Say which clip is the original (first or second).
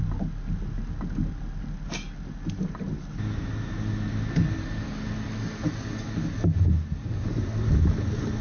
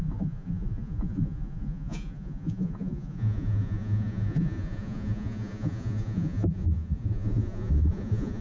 first